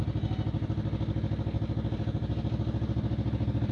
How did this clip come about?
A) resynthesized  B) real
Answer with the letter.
B